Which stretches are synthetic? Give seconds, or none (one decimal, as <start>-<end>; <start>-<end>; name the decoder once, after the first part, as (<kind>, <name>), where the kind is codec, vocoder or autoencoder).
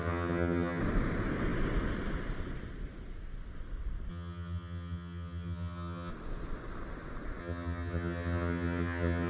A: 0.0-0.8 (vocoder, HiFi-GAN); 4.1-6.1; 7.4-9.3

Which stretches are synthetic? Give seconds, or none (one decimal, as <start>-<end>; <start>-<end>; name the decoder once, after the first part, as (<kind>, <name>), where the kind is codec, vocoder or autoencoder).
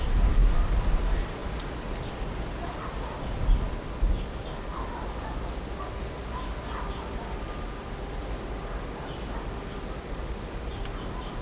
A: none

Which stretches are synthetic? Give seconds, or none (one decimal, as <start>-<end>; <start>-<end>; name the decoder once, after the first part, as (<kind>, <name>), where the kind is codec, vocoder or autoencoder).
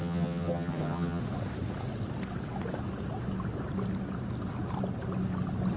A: 0.0-1.2 (vocoder, HiFi-GAN)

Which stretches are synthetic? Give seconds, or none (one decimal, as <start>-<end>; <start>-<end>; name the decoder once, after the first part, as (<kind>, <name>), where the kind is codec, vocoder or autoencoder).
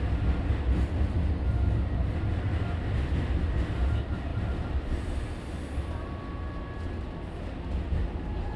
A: none